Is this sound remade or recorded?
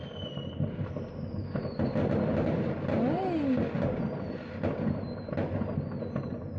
recorded